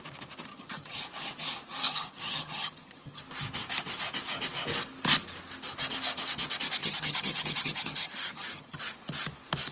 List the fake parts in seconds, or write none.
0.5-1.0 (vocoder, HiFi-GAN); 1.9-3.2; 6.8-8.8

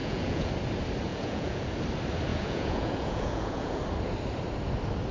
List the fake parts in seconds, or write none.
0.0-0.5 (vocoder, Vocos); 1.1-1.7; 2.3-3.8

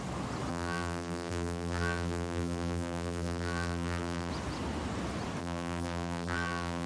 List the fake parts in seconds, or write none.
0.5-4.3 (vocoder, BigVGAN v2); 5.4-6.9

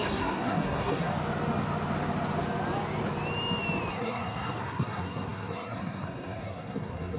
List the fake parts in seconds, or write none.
0.0-1.1 (codec, SNAC); 3.9-7.2

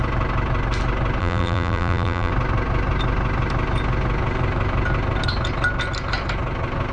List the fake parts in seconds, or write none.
1.2-2.3 (vocoder, BigVGAN v2)

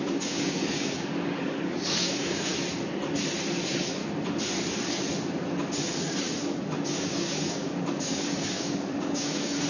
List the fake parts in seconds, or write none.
0.0-2.5 (codec, DAC); 3.6-4.0; 6.9-9.7

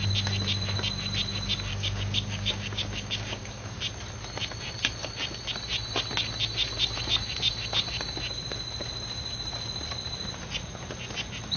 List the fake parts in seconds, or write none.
1.7-3.8 (codec, DAC)